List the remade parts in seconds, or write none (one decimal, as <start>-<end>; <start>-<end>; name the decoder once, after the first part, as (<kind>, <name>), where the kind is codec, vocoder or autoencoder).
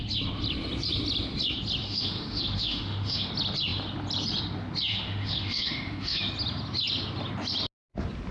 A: 1.8-3.3 (autoencoder, DAC-VAE); 4.9-6.2